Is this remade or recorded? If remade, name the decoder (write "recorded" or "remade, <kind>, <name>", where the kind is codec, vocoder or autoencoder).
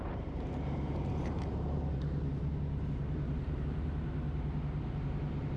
remade, vocoder, BigVGAN v2